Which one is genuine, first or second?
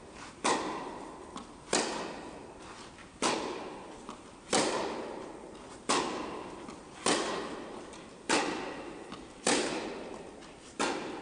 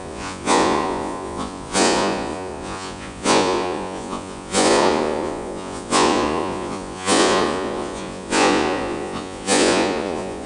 first